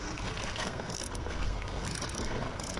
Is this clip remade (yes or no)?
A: yes